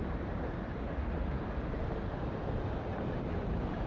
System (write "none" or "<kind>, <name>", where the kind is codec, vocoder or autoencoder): none